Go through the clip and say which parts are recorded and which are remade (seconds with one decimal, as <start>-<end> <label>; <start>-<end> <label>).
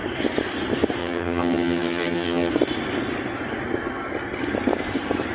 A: 0.0-1.0 recorded; 1.0-2.5 remade; 2.5-5.3 recorded